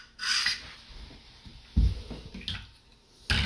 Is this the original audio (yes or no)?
yes